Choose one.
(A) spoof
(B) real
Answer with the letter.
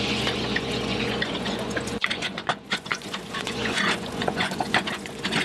A